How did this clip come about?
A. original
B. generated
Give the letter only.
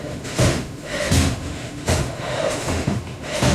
B